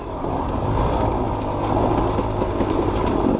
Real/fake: real